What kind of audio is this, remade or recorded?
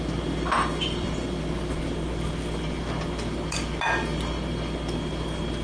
recorded